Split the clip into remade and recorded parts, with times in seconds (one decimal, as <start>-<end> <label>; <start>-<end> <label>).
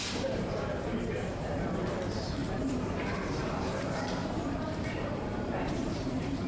0.0-6.5 remade